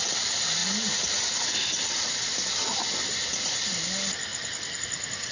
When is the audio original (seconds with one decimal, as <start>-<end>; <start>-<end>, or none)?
none